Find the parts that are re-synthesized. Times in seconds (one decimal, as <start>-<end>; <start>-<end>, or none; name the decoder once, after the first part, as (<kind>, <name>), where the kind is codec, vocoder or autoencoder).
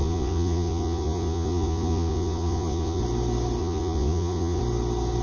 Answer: 0.0-3.0 (vocoder, Vocos); 3.6-4.6